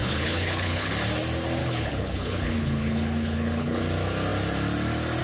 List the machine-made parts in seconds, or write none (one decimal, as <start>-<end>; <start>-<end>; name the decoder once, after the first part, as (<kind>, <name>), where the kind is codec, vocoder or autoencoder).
0.0-0.9 (codec, HILCodec); 1.6-3.8